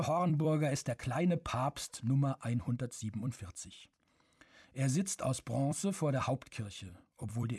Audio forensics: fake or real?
fake